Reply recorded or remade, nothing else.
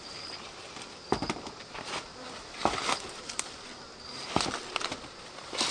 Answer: recorded